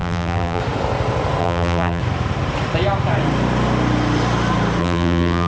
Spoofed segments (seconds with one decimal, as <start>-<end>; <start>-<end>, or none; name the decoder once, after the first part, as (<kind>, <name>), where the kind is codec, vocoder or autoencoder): 0.0-0.6 (vocoder, BigVGAN v2); 1.4-2.0; 4.8-5.5